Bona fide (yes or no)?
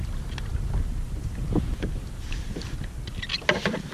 yes